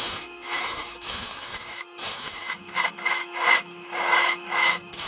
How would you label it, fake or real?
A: fake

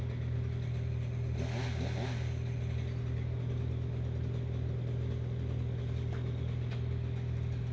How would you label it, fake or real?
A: real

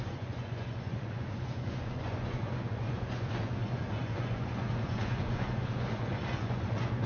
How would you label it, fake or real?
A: fake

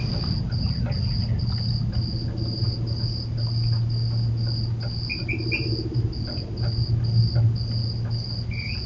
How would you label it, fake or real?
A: real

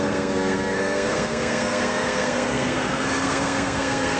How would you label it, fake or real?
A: fake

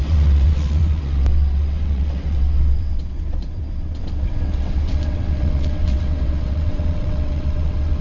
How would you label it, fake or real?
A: fake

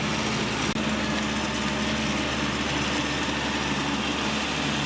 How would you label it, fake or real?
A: real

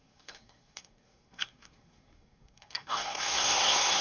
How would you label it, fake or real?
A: fake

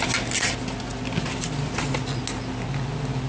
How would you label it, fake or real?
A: real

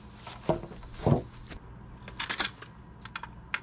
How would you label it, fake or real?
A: real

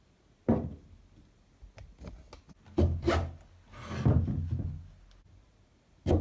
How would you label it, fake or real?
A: real